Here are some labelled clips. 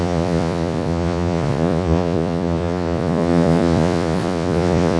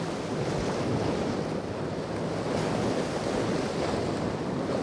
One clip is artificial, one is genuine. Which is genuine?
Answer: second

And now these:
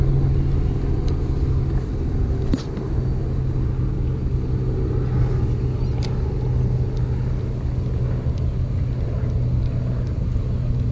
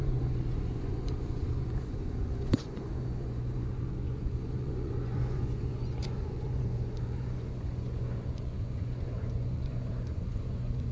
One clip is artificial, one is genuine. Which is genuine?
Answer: first